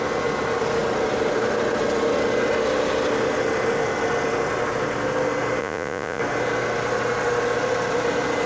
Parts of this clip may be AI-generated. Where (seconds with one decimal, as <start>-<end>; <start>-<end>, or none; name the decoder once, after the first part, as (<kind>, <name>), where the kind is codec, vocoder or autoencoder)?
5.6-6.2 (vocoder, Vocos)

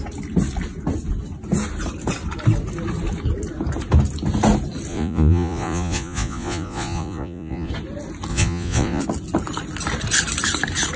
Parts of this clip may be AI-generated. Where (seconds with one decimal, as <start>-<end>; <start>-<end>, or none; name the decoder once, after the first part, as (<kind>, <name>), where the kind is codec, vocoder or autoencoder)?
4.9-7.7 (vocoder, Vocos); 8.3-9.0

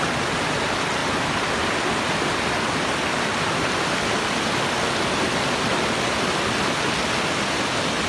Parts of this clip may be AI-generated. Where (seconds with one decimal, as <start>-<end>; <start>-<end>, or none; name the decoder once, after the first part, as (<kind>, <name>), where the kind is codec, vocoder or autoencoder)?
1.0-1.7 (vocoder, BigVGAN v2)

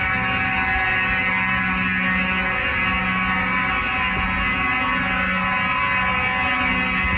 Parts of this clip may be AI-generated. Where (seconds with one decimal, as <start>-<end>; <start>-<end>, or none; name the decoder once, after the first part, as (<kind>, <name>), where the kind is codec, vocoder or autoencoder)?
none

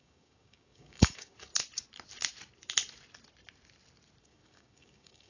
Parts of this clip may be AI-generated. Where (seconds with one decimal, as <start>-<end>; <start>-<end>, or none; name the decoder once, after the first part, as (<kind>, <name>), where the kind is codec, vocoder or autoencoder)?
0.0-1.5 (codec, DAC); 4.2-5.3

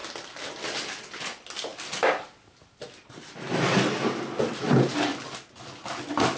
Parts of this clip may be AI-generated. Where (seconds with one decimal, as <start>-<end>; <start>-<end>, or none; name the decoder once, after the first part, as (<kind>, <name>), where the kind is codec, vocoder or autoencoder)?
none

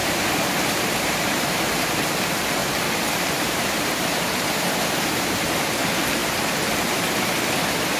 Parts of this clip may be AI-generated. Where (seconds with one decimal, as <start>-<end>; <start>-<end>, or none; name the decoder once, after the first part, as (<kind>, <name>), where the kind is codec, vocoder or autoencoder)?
0.0-2.1 (vocoder, BigVGAN v2); 2.6-5.6

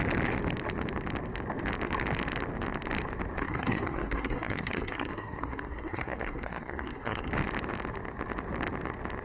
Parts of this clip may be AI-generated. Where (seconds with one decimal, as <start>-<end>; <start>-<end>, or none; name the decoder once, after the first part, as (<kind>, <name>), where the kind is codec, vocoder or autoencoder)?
3.4-7.3 (codec, SNAC)